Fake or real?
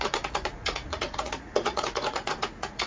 fake